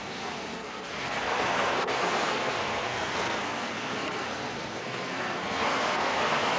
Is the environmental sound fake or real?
fake